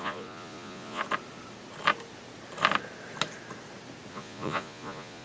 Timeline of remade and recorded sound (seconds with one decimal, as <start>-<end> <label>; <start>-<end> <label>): 0.0-1.0 remade; 1.0-4.1 recorded; 4.1-5.2 remade